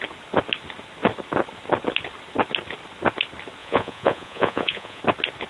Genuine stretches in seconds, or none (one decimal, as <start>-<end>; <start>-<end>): 0.0-3.6; 5.0-5.5